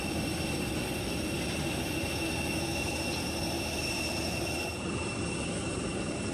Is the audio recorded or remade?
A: recorded